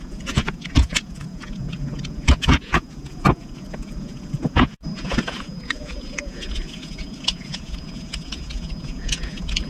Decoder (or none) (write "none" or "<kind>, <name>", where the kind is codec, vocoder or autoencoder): vocoder, Vocos